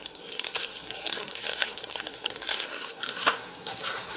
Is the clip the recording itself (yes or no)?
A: no